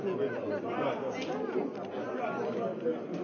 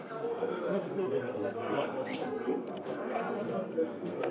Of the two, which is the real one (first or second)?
first